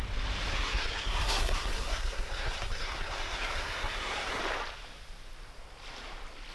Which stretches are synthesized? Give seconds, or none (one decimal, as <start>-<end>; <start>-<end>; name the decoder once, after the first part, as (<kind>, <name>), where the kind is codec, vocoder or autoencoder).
0.5-4.4 (codec, SNAC)